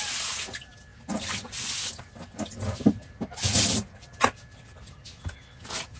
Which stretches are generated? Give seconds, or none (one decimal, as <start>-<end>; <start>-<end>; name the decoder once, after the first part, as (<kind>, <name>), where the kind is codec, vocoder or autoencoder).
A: none